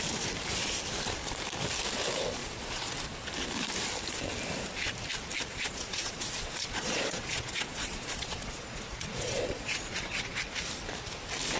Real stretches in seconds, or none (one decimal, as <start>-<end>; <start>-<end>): 0.0-2.4; 2.9-5.5; 10.4-11.6